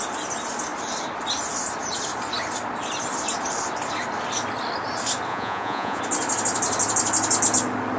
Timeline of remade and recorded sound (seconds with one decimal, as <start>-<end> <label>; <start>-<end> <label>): 0.0-5.3 recorded; 5.3-6.0 remade; 6.0-8.0 recorded